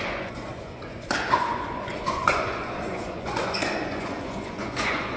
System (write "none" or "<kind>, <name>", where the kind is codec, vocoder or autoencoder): vocoder, Vocos